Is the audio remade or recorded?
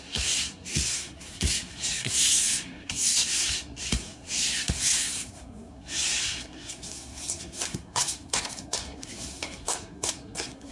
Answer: remade